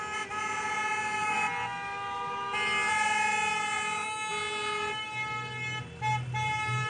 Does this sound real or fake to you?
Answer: real